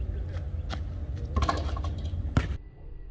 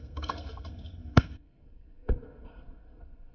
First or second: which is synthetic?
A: second